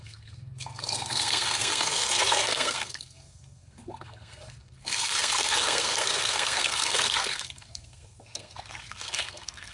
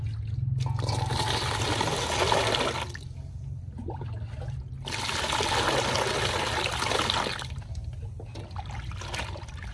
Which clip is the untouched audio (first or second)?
second